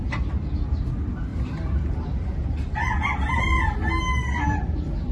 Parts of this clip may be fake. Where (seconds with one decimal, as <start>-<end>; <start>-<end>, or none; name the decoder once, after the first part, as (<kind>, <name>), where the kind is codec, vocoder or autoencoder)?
1.3-4.0 (vocoder, BigVGAN v2)